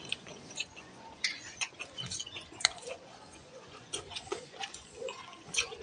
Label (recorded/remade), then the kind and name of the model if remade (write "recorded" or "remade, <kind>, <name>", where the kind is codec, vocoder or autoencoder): remade, vocoder, Vocos